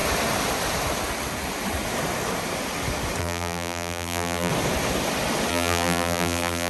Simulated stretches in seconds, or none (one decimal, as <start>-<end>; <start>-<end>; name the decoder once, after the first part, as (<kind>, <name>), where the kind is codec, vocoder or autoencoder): 3.2-4.5 (vocoder, BigVGAN v2); 5.5-6.7